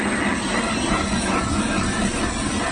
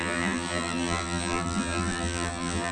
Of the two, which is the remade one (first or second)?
second